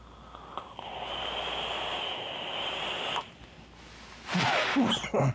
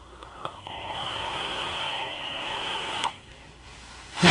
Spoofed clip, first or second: second